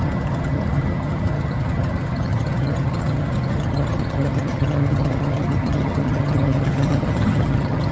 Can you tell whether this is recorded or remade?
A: remade